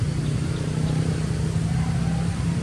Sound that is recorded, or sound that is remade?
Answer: recorded